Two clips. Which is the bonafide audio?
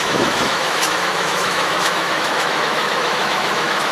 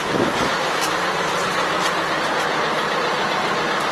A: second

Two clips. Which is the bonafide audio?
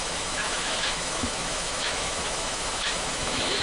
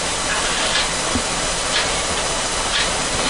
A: second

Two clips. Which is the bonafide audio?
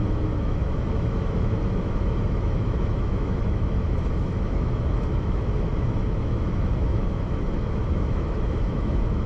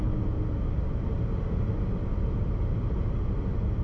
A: second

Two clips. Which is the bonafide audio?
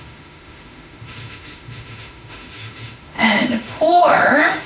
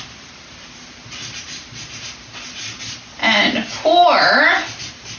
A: second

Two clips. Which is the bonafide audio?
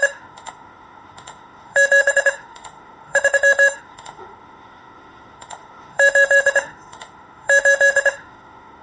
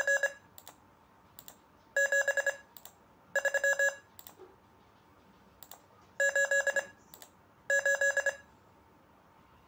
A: second